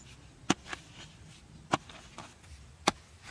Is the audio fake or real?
real